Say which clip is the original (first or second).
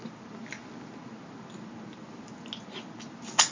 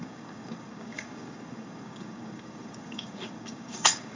first